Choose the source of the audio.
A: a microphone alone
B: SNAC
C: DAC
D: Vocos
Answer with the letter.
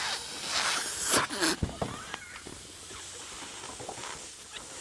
A